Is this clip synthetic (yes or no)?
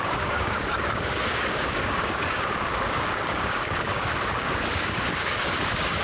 yes